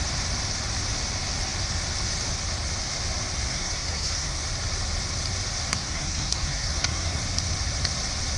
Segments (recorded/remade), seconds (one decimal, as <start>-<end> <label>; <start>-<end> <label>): 0.0-3.5 recorded; 3.5-4.4 remade; 4.4-5.7 recorded; 5.7-7.2 remade; 7.2-8.4 recorded